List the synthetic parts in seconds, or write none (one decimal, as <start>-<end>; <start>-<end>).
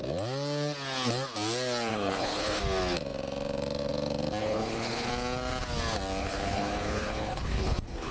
1.9-2.6; 4.4-5.1; 6.2-8.1